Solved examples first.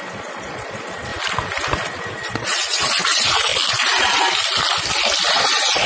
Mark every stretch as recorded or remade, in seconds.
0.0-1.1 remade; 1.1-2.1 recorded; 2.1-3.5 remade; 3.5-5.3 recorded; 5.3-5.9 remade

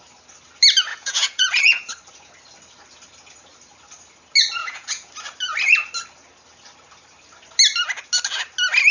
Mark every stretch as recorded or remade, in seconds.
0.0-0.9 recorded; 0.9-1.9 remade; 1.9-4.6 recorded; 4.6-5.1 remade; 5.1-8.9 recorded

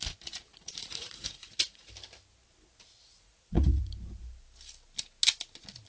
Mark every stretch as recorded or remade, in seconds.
0.0-0.5 recorded; 0.5-1.9 remade; 1.9-3.0 recorded; 3.0-3.8 remade; 3.8-5.9 recorded

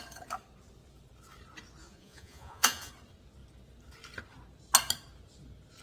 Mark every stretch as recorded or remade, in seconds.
0.0-1.8 recorded; 1.8-2.9 remade; 2.9-5.8 recorded

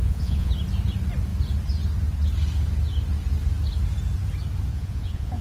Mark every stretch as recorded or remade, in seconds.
0.0-0.5 remade; 0.5-4.7 recorded; 4.7-5.4 remade

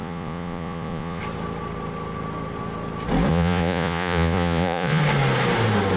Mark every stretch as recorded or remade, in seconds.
0.0-1.2 remade; 1.2-3.3 recorded; 3.3-5.0 remade; 5.0-6.0 recorded